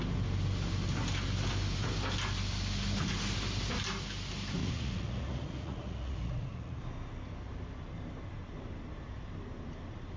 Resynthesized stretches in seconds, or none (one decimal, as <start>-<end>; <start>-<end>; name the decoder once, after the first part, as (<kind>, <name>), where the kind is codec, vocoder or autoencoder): 4.6-6.8 (vocoder, Vocos)